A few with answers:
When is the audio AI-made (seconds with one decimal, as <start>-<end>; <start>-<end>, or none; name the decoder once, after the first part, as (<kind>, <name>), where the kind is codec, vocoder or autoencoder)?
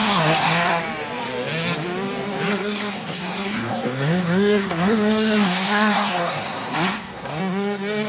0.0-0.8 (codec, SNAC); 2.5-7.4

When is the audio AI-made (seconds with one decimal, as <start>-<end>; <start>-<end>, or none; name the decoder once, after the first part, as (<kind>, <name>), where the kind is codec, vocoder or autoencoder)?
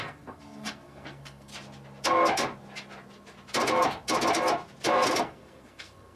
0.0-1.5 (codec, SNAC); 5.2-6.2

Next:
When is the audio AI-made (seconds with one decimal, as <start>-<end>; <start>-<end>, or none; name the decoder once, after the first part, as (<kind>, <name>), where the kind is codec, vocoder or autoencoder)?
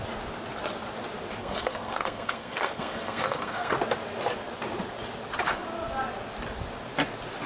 1.4-3.7 (codec, SNAC)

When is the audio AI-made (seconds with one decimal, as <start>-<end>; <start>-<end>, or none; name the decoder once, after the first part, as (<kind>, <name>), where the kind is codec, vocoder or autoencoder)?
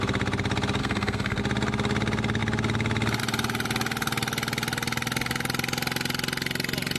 0.8-1.4 (codec, SNAC)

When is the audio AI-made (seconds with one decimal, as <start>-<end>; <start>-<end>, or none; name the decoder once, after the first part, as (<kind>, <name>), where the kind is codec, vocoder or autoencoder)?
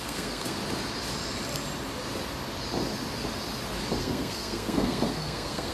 0.0-0.6 (codec, SNAC); 4.0-5.7